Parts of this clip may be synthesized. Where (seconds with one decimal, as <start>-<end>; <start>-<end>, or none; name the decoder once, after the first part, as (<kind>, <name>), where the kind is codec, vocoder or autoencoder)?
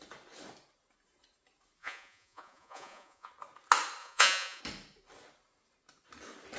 1.8-3.3 (vocoder, Vocos); 4.0-4.6